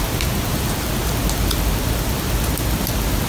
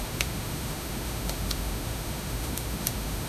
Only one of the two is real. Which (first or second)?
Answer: first